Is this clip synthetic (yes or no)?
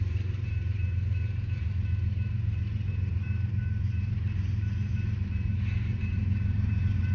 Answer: yes